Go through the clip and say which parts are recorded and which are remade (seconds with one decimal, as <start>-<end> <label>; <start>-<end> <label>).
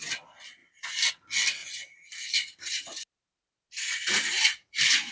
0.0-0.6 recorded; 0.6-1.1 remade; 1.1-1.6 recorded; 1.6-5.1 remade